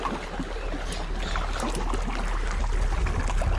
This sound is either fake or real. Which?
real